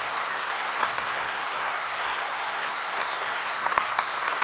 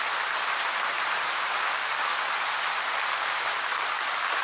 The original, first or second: second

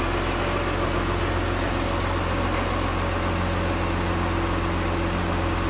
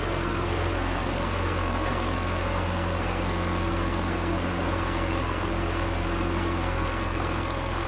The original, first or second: first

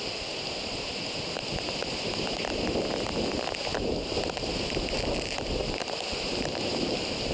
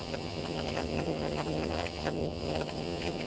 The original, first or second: first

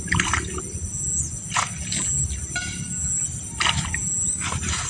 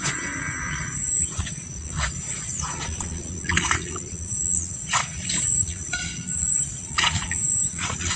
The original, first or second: first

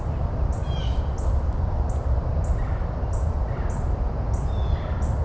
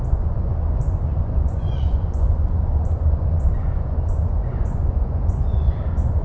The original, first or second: first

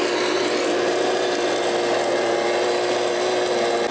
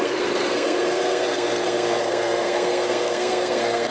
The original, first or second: first